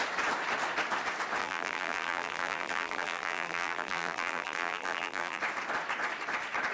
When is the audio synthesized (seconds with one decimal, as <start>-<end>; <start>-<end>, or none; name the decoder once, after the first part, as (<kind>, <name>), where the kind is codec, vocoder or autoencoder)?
1.4-5.4 (vocoder, BigVGAN v2)

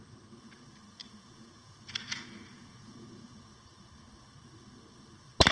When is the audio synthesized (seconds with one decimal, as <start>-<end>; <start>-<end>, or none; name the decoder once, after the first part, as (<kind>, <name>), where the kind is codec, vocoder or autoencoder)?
1.0-3.6 (vocoder, Vocos)

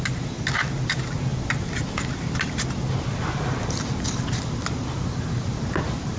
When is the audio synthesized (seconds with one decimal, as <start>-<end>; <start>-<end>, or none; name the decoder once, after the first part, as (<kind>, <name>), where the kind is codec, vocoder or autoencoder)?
none

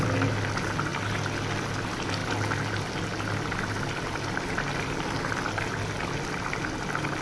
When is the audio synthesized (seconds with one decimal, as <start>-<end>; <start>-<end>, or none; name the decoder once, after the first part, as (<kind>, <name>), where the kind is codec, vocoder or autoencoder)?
none

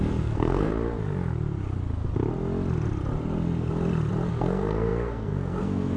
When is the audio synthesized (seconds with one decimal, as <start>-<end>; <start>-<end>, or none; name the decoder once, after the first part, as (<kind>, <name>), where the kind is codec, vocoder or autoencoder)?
0.0-0.7 (codec, SNAC); 4.3-6.0

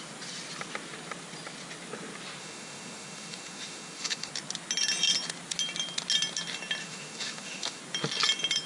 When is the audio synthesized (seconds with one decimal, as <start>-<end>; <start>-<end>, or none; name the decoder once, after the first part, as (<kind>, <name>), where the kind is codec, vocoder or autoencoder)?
2.4-4.3 (autoencoder, DAC-VAE); 6.8-7.8